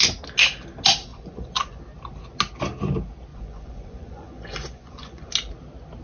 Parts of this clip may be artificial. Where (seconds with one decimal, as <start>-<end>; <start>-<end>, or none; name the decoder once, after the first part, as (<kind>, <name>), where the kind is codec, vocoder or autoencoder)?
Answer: 1.1-1.8 (vocoder, Vocos); 3.3-5.3